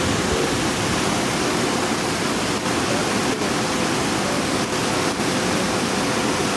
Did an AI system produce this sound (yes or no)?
no